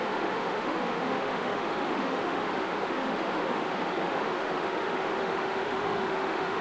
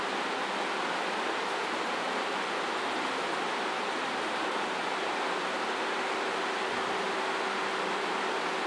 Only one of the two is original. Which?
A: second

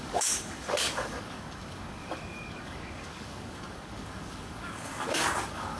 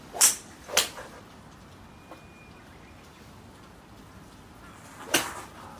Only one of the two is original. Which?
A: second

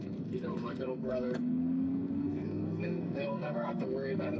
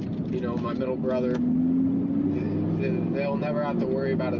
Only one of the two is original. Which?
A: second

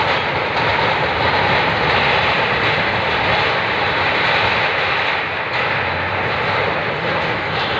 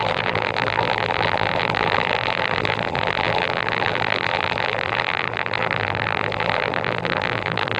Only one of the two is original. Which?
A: first